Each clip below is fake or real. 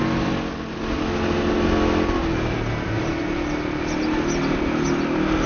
real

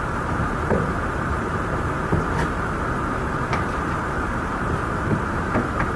fake